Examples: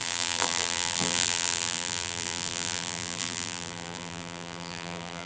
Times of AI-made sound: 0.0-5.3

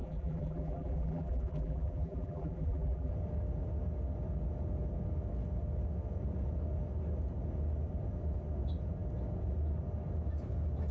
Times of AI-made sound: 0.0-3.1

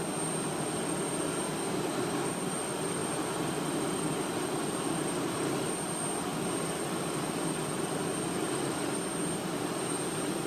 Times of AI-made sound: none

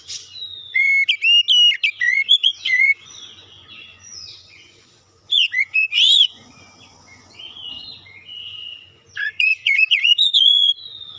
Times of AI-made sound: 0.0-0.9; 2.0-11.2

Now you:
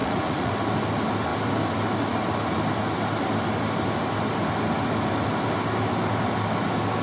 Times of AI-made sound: 0.0-0.5